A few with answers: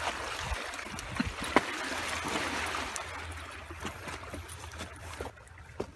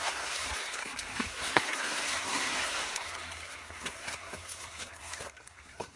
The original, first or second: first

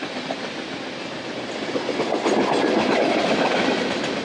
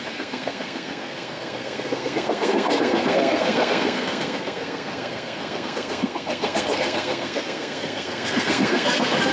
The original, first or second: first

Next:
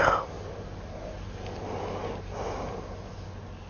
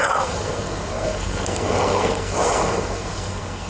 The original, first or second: first